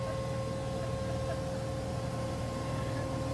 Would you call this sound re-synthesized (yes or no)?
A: no